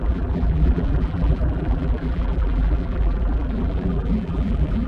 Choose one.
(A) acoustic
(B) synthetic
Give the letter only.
B